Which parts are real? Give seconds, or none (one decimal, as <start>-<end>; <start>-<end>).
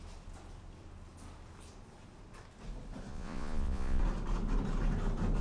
0.0-3.1; 4.0-5.4